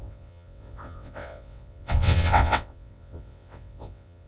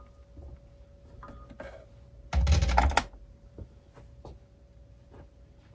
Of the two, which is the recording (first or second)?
second